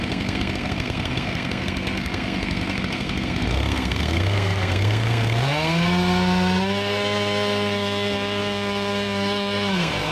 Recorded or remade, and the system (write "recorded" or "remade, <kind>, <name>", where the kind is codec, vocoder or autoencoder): remade, codec, SNAC